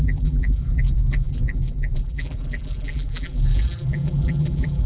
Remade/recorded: remade